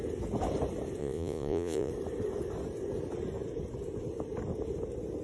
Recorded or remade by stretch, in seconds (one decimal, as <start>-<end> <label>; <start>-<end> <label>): 0.0-1.0 recorded; 1.0-1.9 remade; 1.9-5.2 recorded